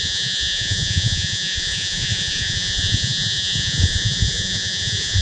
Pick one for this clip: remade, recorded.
remade